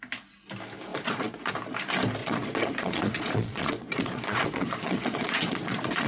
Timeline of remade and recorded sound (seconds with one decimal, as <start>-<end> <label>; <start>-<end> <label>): 0.0-0.9 recorded; 0.9-1.5 remade; 1.5-2.2 recorded; 2.2-6.1 remade